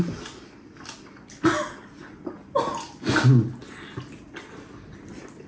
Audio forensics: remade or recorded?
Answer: recorded